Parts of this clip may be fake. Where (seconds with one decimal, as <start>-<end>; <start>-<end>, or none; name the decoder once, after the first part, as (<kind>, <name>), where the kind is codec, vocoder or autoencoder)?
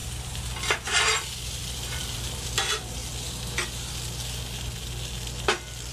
0.0-3.0 (vocoder, BigVGAN v2)